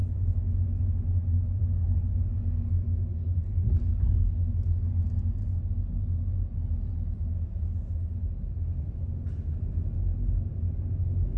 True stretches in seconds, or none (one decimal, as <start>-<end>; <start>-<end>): 0.8-11.4